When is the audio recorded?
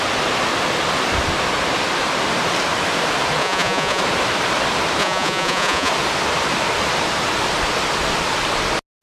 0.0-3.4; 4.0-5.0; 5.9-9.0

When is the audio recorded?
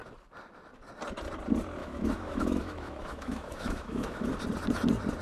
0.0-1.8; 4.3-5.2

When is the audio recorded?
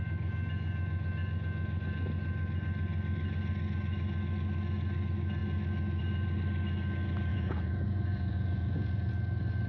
0.0-7.3; 9.1-9.7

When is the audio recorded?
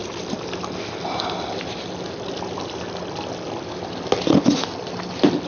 0.0-5.5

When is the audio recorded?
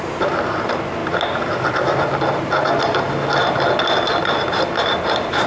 0.0-5.5